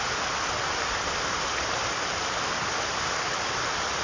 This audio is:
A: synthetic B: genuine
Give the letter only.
B